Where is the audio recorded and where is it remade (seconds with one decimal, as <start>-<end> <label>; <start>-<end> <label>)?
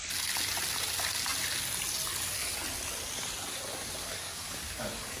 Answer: 0.0-4.0 recorded; 4.0-5.2 remade